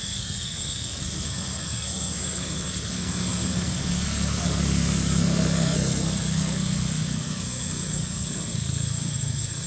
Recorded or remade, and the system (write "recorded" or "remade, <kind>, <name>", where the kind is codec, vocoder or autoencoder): remade, codec, SNAC